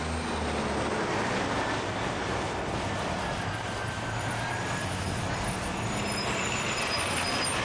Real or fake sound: real